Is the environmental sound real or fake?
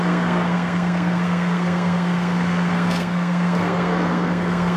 fake